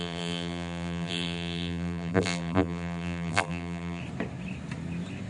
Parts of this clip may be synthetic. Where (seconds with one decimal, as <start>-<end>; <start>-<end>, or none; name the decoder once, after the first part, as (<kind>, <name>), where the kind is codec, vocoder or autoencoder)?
0.0-4.0 (vocoder, BigVGAN v2)